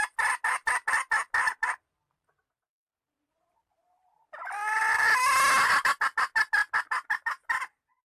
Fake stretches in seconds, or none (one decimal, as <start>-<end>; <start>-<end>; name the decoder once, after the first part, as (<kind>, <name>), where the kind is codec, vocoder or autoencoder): none